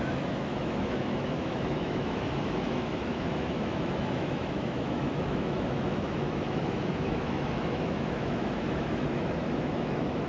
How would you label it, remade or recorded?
remade